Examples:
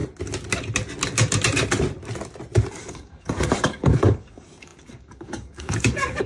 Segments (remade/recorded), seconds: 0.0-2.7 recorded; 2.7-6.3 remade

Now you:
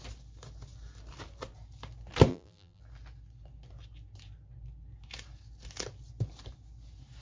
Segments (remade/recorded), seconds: 0.0-2.3 recorded; 2.3-2.8 remade; 2.8-7.2 recorded